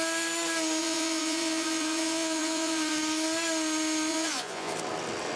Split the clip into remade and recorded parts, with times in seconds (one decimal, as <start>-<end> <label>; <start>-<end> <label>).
0.0-0.8 recorded; 0.8-3.0 remade; 3.0-4.1 recorded; 4.1-4.7 remade; 4.7-5.4 recorded